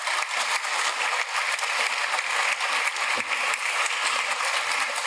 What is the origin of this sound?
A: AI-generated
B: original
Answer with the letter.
A